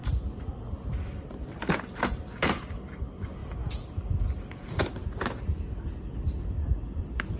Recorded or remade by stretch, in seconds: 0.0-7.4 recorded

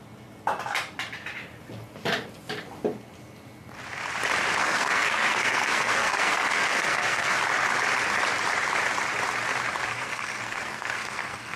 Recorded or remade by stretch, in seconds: 0.0-4.6 recorded; 4.6-7.4 remade; 7.4-9.9 recorded; 9.9-11.6 remade

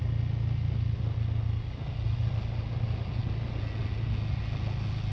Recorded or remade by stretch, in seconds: 0.0-5.1 recorded

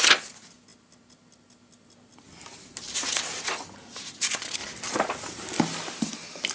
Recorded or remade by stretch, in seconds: 0.0-4.6 recorded; 4.6-5.6 remade; 5.6-6.5 recorded